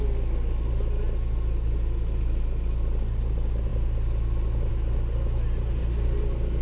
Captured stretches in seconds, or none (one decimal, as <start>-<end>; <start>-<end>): 0.0-6.6